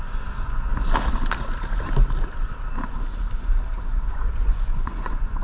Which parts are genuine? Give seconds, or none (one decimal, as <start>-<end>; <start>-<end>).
0.7-3.9

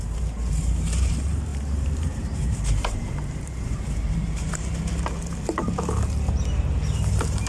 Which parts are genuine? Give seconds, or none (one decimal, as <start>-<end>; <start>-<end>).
4.7-6.6